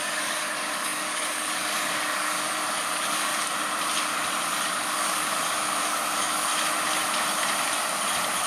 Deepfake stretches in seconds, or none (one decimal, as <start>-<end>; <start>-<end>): 0.0-3.3; 4.7-6.5